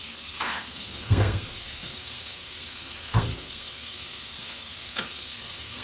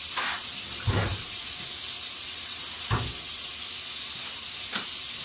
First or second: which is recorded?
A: second